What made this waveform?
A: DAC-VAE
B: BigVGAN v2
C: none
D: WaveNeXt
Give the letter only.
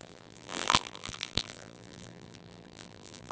B